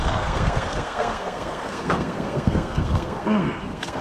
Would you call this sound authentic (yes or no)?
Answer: no